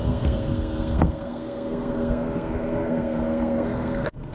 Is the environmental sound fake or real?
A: fake